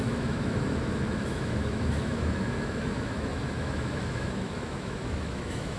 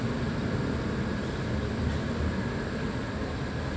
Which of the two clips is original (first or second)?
second